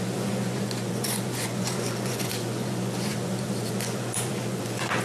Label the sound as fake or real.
fake